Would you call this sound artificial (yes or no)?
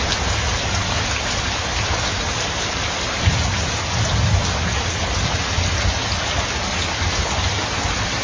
no